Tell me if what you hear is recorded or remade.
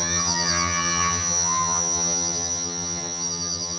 remade